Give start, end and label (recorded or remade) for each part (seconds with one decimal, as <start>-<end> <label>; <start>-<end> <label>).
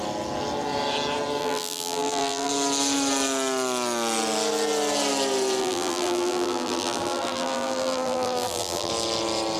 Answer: 0.0-1.4 recorded; 1.4-2.5 remade; 2.5-5.6 recorded; 5.6-8.9 remade; 8.9-9.6 recorded